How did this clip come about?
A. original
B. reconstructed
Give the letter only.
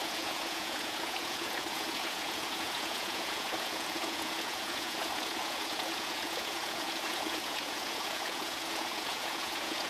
B